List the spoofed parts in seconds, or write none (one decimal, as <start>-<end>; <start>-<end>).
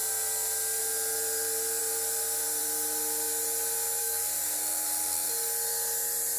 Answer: 4.0-5.3